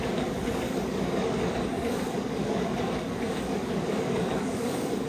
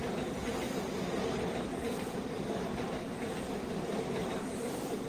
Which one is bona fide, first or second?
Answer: second